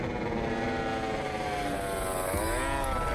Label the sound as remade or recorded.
recorded